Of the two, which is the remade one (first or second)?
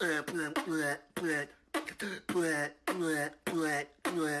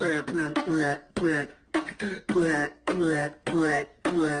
second